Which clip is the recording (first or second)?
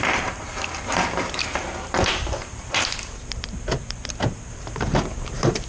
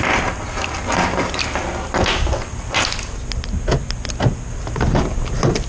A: second